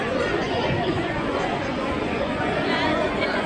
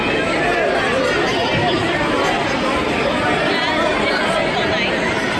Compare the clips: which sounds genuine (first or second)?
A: second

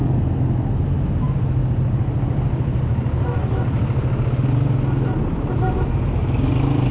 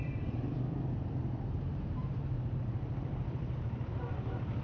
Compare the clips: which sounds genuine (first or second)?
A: first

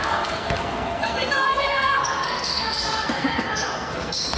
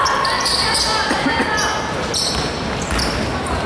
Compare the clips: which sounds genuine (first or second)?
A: second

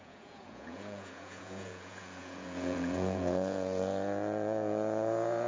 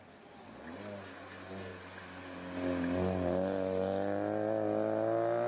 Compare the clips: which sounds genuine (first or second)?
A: second